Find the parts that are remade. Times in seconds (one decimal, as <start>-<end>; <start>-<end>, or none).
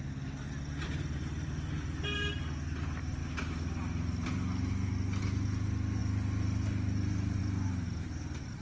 none